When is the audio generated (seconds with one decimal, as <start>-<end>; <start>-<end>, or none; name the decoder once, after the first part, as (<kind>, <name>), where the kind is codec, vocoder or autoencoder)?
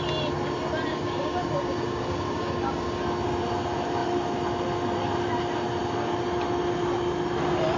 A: 0.9-3.0 (codec, DAC)